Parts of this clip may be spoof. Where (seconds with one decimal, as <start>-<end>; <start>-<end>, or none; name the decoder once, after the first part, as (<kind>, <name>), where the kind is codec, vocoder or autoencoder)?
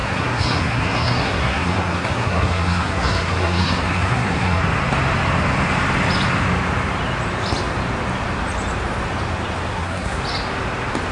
0.0-4.6 (codec, SNAC); 9.7-10.2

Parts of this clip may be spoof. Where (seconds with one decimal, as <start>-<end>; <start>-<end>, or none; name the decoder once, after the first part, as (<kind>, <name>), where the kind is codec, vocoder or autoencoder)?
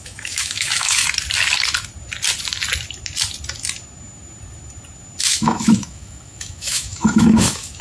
0.0-1.0 (autoencoder, DAC-VAE); 5.2-7.8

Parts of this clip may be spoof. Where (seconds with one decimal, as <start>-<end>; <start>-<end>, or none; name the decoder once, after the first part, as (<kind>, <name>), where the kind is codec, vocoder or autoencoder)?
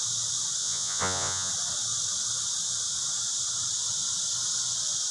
0.6-1.5 (vocoder, Vocos)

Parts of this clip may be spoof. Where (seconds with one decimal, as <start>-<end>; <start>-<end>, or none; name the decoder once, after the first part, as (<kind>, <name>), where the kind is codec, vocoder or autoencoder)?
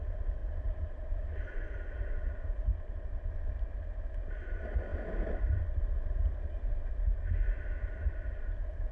0.4-2.3 (vocoder, BigVGAN v2); 4.9-6.9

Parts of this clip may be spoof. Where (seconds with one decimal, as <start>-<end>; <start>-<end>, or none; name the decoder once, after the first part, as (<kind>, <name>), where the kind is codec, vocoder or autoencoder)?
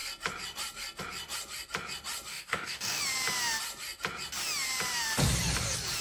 2.3-3.0 (codec, DAC)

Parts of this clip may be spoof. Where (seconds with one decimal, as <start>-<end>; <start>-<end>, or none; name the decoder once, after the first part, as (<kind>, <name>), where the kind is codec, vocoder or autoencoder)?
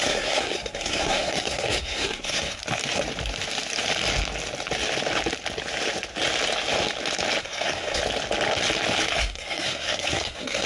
0.0-2.6 (codec, SNAC); 7.4-8.0; 9.1-10.7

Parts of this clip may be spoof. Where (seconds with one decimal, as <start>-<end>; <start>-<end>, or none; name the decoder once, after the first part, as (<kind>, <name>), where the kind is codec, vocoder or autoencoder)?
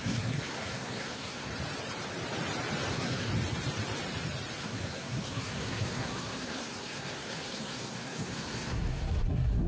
0.0-1.5 (codec, SNAC); 2.9-3.3; 4.6-9.7